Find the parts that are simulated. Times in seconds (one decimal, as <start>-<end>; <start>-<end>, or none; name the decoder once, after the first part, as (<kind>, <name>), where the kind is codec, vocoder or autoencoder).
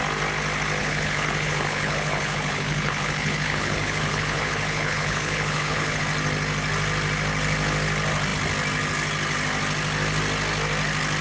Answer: 0.8-6.0 (codec, HILCodec)